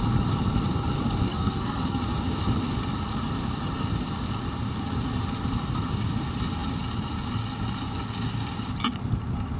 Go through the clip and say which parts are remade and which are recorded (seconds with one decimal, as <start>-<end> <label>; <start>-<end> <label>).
0.0-1.3 recorded; 1.3-2.0 remade; 2.0-9.6 recorded